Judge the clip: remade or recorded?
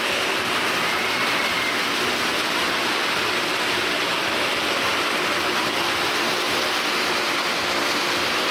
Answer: recorded